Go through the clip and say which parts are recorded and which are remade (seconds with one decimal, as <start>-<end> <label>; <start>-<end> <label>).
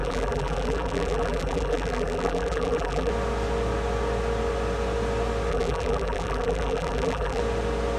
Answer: 0.0-3.1 remade; 3.1-5.5 recorded; 5.5-7.4 remade; 7.4-8.0 recorded